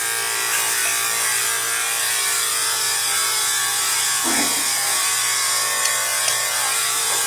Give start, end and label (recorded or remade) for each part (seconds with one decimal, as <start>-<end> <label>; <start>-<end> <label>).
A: 0.0-2.5 recorded; 2.5-7.3 remade